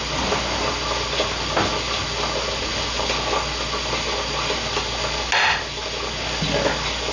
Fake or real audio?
real